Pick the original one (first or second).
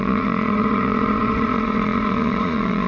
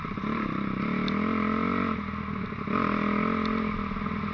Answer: second